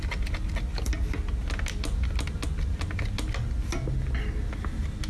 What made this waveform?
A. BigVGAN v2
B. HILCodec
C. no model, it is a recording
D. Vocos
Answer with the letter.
C